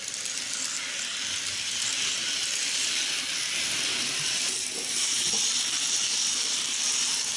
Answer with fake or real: real